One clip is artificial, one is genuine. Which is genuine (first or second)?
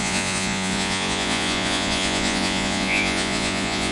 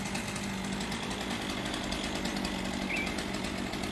second